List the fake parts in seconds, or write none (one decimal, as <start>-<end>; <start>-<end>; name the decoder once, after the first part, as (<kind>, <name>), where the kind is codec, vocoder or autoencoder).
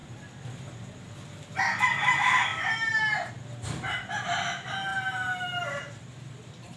2.5-3.3 (vocoder, BigVGAN v2); 4.9-6.8